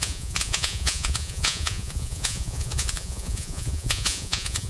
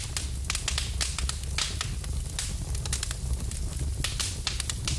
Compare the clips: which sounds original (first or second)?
second